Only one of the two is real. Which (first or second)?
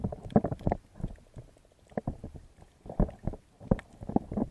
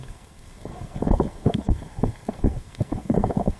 first